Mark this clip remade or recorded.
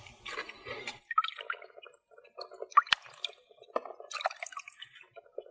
recorded